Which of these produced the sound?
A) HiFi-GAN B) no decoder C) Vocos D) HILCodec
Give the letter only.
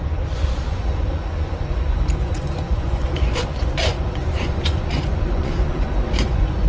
C